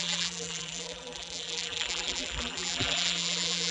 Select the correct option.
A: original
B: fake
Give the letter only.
B